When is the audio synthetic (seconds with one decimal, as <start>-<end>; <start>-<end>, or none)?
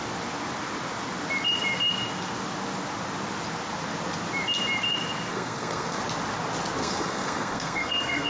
5.3-6.0; 6.8-8.3